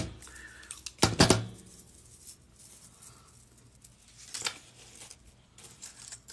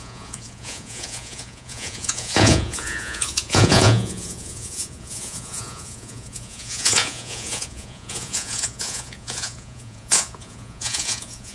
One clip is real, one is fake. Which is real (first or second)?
first